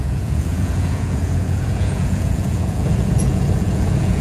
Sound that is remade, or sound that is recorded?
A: remade